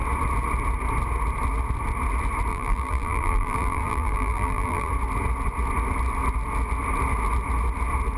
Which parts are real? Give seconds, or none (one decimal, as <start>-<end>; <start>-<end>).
0.0-2.5; 4.9-8.2